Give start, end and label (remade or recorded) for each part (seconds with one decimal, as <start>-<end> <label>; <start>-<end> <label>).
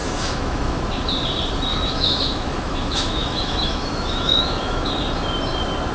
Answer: 0.0-0.8 remade; 0.8-1.7 recorded; 1.7-4.9 remade; 4.9-5.9 recorded